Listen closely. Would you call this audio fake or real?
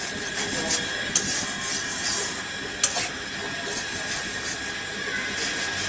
real